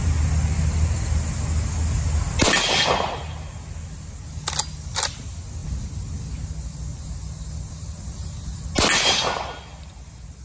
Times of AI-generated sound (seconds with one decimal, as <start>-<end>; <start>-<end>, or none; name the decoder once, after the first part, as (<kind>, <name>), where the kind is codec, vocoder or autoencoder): none